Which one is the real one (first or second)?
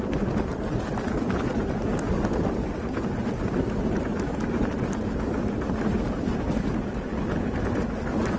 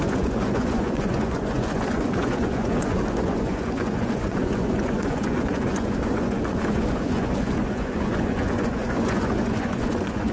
first